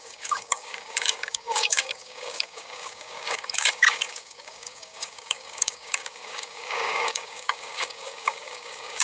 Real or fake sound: fake